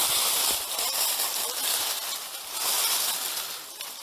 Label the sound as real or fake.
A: real